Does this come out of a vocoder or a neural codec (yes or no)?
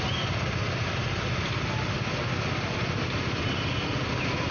no